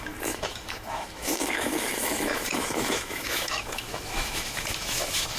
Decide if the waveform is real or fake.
fake